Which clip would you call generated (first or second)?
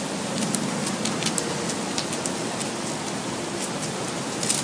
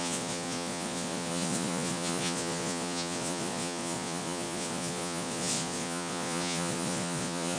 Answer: second